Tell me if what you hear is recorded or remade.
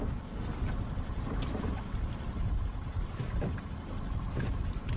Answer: recorded